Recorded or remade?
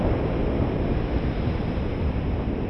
recorded